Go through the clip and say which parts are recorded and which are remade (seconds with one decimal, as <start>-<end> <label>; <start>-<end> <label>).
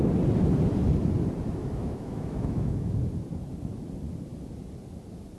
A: 0.0-1.6 recorded; 1.6-3.0 remade; 3.0-5.4 recorded